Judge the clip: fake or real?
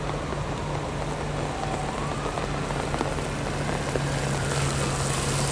real